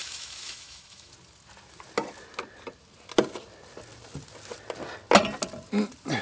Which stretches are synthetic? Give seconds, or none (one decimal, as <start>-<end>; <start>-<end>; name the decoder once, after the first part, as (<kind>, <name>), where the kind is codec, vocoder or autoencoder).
0.0-1.1 (autoencoder, DAC-VAE)